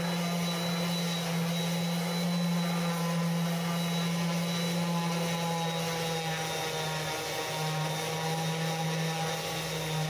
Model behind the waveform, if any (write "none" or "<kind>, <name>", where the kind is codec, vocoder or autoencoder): none